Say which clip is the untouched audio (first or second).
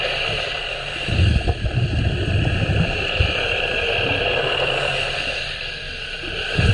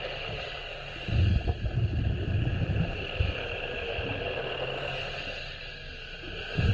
second